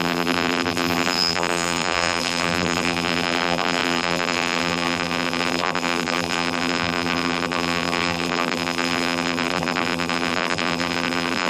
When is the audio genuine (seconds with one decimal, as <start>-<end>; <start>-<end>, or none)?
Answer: none